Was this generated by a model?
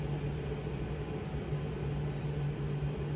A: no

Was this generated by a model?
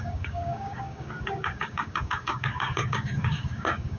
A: yes